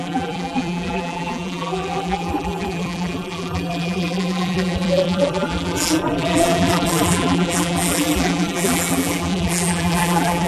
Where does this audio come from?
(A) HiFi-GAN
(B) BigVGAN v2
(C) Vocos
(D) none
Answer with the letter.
B